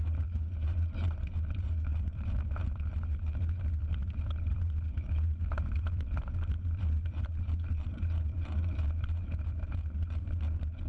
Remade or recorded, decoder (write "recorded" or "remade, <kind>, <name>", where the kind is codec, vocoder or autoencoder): remade, vocoder, BigVGAN v2